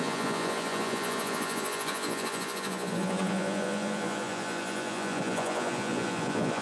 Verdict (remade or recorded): remade